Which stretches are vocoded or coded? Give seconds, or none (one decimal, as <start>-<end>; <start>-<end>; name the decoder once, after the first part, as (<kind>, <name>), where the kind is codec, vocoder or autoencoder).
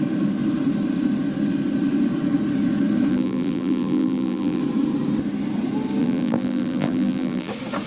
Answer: 3.1-4.6 (vocoder, BigVGAN v2); 6.0-7.5